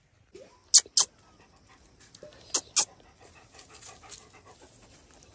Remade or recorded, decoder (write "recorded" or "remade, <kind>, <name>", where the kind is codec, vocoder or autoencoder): recorded